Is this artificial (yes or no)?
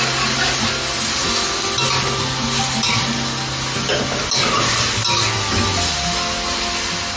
no